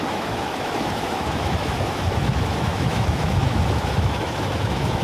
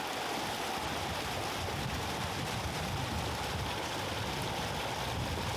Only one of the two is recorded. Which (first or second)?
second